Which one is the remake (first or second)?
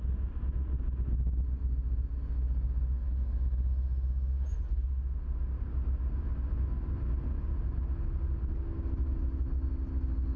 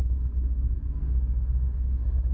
second